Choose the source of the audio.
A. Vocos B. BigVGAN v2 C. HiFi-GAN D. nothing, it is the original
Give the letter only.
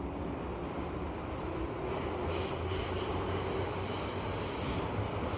D